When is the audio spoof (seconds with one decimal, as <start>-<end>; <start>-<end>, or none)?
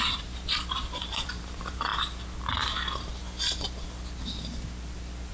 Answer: 0.0-1.9